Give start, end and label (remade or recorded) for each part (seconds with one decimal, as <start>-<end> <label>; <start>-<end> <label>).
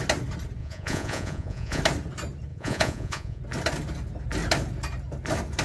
0.0-0.6 recorded; 0.6-1.8 remade; 1.8-2.5 recorded; 2.5-3.4 remade; 3.4-5.6 recorded